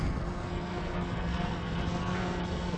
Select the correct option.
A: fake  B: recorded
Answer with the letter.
A